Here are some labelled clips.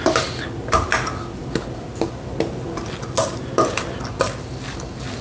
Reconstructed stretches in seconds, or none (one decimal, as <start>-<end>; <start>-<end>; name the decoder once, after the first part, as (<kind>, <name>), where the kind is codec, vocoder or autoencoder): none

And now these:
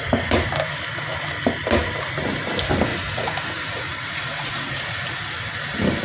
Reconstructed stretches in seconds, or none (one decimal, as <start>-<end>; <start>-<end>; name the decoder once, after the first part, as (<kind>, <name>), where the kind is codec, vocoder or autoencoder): 2.9-5.4 (vocoder, Vocos)

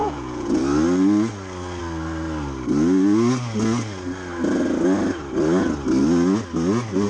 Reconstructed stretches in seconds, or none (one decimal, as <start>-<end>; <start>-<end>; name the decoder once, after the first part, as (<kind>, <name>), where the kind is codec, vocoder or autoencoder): 0.0-0.6 (vocoder, Vocos)

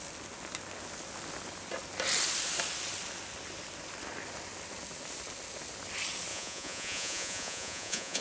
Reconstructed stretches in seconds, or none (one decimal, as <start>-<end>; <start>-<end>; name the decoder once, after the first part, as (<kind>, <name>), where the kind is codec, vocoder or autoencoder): 6.3-8.2 (vocoder, Vocos)

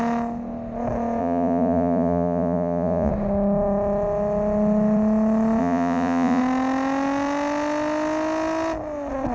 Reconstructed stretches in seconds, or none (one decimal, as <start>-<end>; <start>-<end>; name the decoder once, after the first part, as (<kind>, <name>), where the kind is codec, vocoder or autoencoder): 1.2-3.1 (vocoder, Vocos); 5.6-6.4

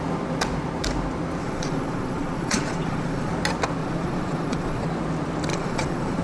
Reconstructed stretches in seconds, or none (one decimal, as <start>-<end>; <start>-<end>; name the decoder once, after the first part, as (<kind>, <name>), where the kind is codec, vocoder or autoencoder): 1.4-3.3 (vocoder, Vocos); 3.8-4.9; 5.5-6.2